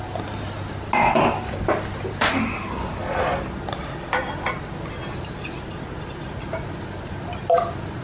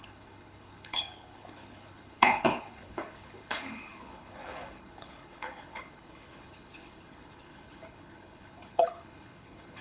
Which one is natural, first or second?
first